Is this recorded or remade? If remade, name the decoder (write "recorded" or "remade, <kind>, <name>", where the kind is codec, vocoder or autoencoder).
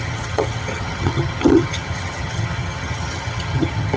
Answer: remade, vocoder, HiFi-GAN